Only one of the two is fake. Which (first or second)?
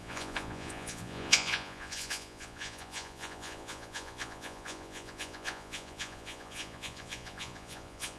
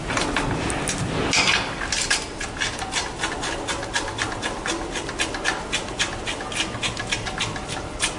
first